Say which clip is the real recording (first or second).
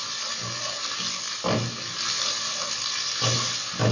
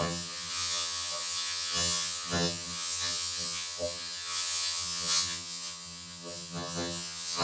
first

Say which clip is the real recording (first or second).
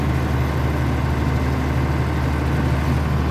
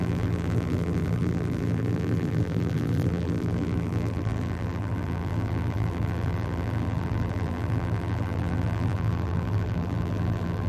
first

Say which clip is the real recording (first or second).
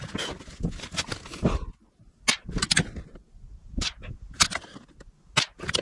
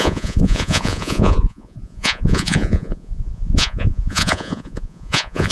first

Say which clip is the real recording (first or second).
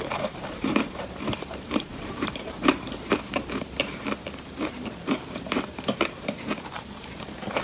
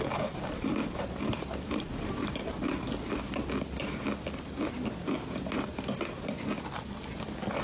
second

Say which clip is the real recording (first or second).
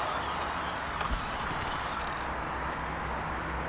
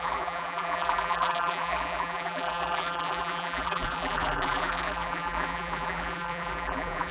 first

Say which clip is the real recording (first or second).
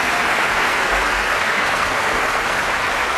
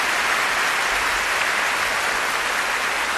second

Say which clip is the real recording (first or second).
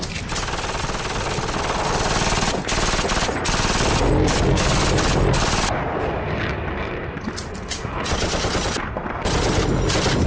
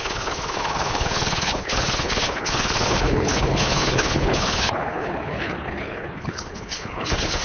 first